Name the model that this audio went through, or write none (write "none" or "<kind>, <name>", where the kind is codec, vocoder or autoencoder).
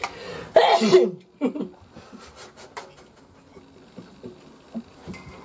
none